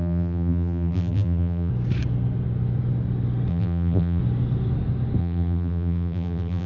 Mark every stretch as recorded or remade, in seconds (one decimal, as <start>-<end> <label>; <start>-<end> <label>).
0.0-1.7 remade; 1.7-3.5 recorded; 3.5-4.2 remade; 4.2-5.2 recorded; 5.2-6.7 remade